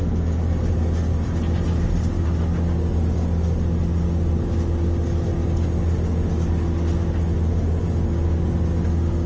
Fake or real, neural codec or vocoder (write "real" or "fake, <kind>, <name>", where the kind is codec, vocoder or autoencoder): real